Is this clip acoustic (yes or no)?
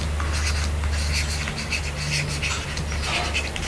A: yes